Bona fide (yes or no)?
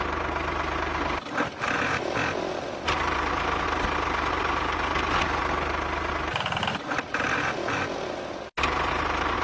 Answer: yes